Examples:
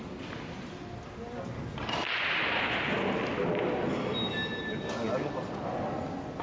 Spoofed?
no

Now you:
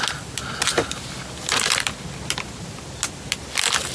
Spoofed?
no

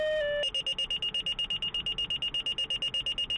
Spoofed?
no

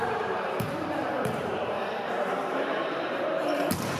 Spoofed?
yes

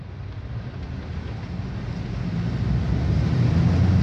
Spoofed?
no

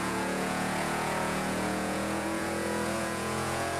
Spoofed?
yes